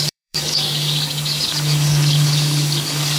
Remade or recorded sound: remade